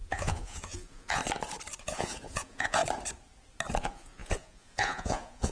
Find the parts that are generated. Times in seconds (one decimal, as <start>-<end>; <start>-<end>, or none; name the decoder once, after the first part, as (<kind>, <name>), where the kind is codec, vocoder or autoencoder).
0.0-1.2 (vocoder, Vocos); 1.8-2.8; 3.8-5.5